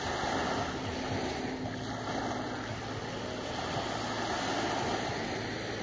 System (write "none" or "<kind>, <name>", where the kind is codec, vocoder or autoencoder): none